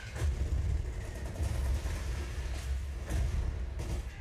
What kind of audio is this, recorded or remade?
recorded